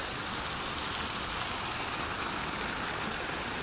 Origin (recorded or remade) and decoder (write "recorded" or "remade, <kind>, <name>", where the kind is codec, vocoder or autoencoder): recorded